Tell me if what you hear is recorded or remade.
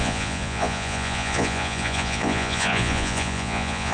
remade